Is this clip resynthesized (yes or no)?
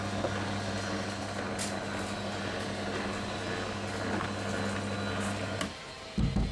no